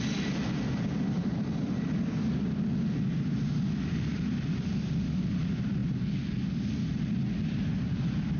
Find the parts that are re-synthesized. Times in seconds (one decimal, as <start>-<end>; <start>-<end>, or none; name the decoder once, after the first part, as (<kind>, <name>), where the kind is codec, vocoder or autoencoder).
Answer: none